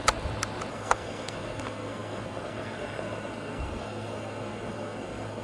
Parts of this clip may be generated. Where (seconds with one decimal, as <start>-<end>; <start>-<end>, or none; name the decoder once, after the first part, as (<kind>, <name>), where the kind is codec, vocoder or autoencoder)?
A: 0.7-5.4 (codec, SNAC)